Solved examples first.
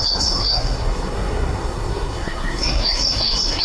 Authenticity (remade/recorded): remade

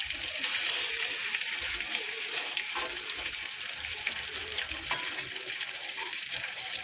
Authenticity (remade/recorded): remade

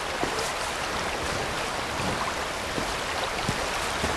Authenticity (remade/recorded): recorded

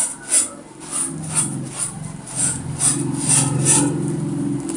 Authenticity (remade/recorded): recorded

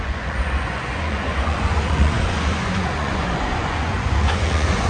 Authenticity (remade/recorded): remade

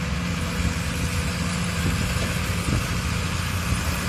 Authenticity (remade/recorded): recorded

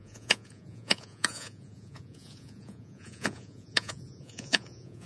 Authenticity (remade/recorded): remade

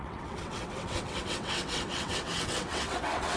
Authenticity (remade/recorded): remade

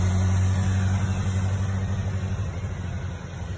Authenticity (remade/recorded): recorded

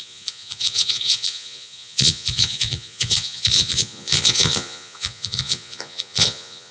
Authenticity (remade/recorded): remade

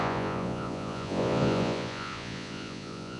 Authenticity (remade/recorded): remade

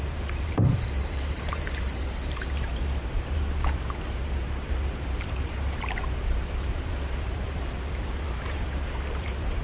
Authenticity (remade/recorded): remade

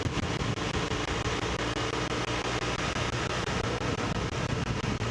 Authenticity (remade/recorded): recorded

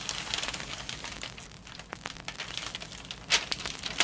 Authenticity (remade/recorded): recorded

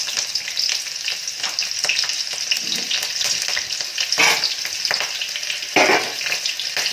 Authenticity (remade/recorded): recorded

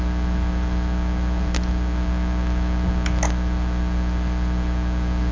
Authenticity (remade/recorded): recorded